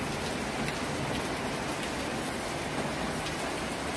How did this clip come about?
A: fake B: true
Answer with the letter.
B